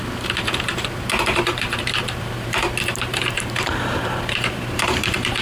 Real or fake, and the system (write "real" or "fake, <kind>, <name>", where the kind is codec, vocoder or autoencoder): fake, vocoder, BigVGAN v2